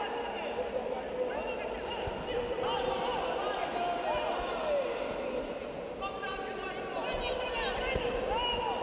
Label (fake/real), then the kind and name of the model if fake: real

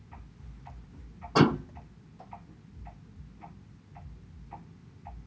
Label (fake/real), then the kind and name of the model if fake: real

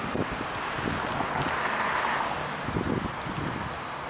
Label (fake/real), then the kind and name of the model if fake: real